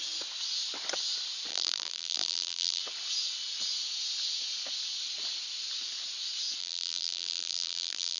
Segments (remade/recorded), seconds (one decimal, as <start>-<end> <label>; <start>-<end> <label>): 0.0-1.5 recorded; 1.5-2.8 remade; 2.8-6.6 recorded; 6.6-8.2 remade